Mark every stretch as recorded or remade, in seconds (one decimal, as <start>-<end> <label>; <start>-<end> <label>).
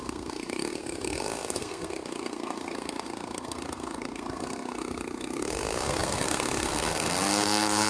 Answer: 0.0-7.9 remade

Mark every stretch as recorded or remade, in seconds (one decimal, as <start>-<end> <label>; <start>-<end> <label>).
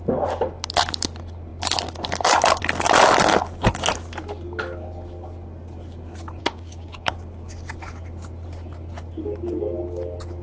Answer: 0.0-6.4 recorded; 6.4-7.1 remade; 7.1-10.4 recorded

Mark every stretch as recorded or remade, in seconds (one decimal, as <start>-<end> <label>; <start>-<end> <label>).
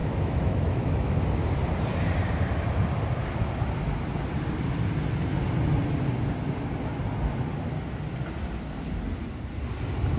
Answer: 0.0-1.2 remade; 1.2-10.2 recorded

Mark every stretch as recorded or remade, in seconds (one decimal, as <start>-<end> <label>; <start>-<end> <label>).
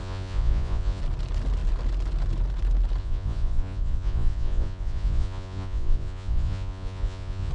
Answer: 0.0-1.0 remade; 1.0-3.0 recorded; 3.0-7.5 remade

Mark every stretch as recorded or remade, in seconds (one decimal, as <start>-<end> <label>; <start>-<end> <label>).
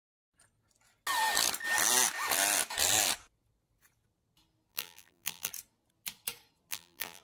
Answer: 0.0-4.7 recorded; 4.7-5.5 remade; 5.5-6.7 recorded; 6.7-7.2 remade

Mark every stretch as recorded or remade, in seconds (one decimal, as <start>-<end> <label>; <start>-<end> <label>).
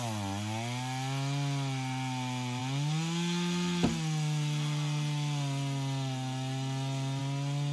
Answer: 0.0-7.7 recorded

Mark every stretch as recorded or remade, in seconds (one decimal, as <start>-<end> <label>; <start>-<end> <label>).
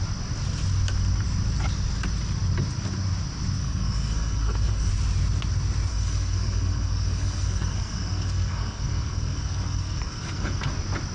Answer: 0.0-3.6 recorded; 3.6-4.9 remade; 4.9-5.9 recorded; 5.9-10.7 remade; 10.7-11.1 recorded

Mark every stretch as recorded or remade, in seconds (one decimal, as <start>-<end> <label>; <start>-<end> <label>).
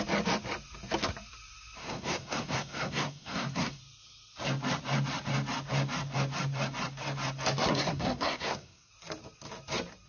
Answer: 0.0-1.8 recorded; 1.8-3.8 remade; 3.8-7.7 recorded; 7.7-8.9 remade; 8.9-10.1 recorded